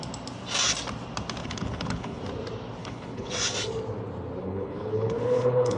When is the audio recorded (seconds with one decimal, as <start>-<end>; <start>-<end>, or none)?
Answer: 0.0-1.4; 2.2-2.8; 3.3-4.4